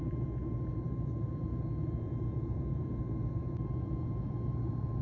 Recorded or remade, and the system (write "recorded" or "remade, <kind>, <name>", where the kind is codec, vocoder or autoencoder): remade, vocoder, BigVGAN v2